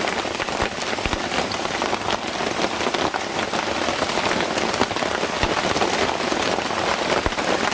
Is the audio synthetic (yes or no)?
no